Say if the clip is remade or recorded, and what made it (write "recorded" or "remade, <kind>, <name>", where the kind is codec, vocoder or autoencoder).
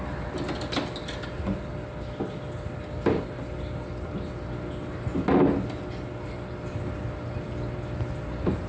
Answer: recorded